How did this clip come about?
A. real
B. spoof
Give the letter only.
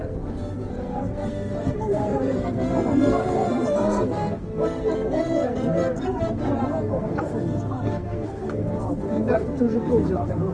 B